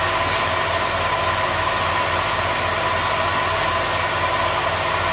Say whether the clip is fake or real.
real